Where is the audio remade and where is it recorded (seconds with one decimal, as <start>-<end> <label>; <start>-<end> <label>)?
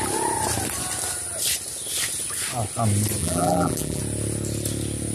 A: 0.0-3.2 recorded; 3.2-4.0 remade; 4.0-5.1 recorded